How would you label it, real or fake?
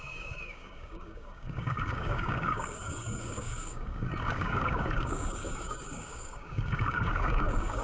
fake